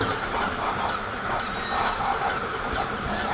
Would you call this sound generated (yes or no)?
yes